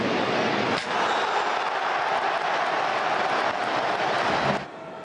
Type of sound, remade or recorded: recorded